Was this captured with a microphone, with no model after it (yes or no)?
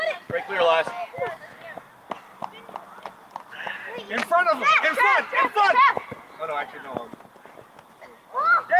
yes